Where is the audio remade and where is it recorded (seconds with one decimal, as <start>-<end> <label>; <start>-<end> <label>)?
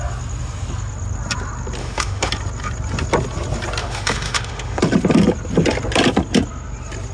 0.0-1.8 recorded; 1.8-2.3 remade; 2.3-3.8 recorded; 3.8-4.8 remade; 4.8-7.1 recorded